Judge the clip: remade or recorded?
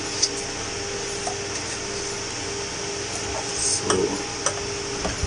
recorded